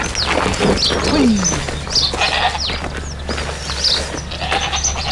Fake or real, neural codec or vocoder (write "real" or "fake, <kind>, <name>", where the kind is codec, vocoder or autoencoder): real